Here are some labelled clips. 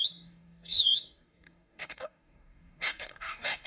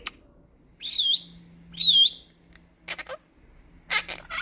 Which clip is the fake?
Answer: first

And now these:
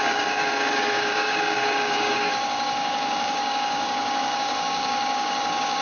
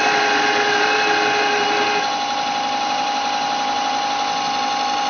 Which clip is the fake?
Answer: first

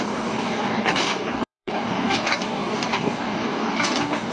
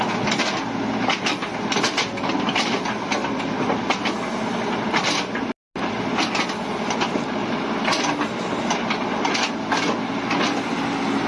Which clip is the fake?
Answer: first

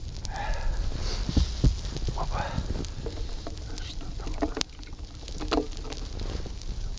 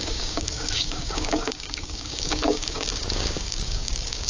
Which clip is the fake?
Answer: second